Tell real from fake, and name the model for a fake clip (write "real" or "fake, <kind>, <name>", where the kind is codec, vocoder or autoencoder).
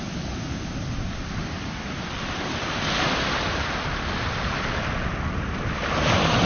real